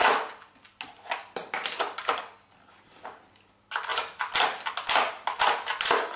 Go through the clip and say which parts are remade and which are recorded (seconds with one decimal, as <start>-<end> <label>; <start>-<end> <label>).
0.0-6.2 recorded

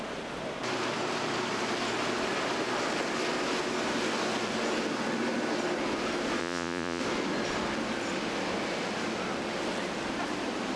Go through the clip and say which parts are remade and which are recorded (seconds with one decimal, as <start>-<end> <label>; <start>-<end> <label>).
0.0-6.4 recorded; 6.4-7.0 remade; 7.0-10.8 recorded

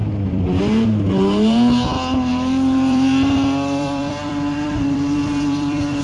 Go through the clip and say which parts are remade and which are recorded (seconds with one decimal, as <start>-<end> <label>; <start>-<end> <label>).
0.0-0.6 remade; 0.6-2.3 recorded; 2.3-6.0 remade

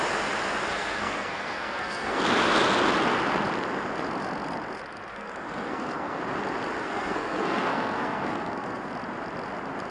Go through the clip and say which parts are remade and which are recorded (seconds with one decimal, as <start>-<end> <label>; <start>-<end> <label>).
0.0-0.7 recorded; 0.7-2.2 remade; 2.2-5.1 recorded; 5.1-6.2 remade; 6.2-6.8 recorded; 6.8-8.9 remade; 8.9-9.9 recorded